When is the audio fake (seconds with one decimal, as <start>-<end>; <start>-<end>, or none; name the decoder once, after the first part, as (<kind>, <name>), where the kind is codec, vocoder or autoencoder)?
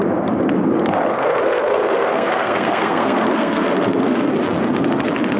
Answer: 1.1-4.3 (codec, SNAC)